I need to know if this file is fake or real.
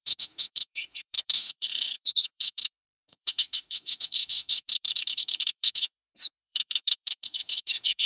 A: fake